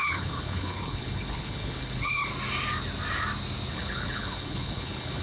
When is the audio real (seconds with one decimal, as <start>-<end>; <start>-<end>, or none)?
2.3-3.7